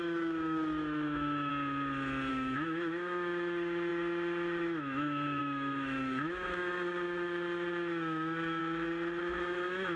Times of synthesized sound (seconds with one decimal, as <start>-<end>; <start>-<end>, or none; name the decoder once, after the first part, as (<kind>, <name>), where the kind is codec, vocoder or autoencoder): 0.0-1.5 (autoencoder, DAC-VAE); 2.3-8.6; 9.4-10.0